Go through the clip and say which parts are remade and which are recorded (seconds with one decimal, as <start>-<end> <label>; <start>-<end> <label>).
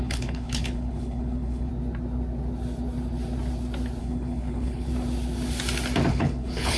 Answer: 0.0-1.7 remade; 1.7-4.0 recorded; 4.0-4.9 remade; 4.9-6.1 recorded; 6.1-6.8 remade